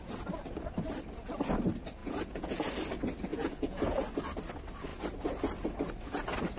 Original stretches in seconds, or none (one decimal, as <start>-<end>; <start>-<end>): 0.0-2.0; 2.7-3.3; 4.0-6.6